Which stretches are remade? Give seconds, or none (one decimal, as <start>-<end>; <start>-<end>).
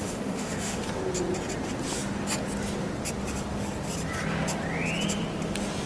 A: 0.0-0.8